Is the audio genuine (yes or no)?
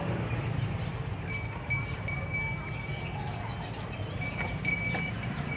yes